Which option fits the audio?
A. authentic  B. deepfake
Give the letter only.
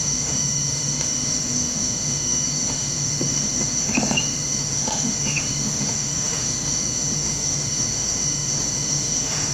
B